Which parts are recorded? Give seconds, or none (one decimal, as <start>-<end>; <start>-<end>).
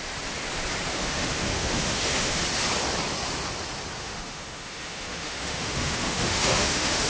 0.0-0.9; 2.4-4.0